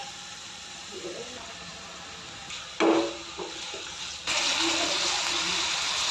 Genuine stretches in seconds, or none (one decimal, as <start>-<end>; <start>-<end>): 1.7-6.1

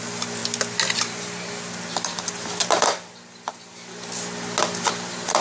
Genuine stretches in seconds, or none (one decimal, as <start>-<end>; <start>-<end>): 0.0-5.4